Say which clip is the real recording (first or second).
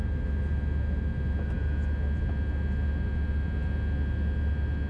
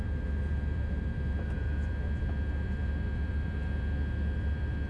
first